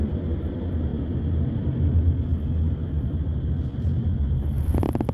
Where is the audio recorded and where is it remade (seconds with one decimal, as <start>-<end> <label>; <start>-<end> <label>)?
0.0-5.1 recorded